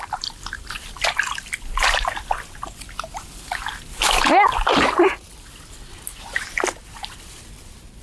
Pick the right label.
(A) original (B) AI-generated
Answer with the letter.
A